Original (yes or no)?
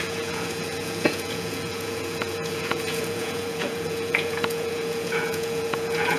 no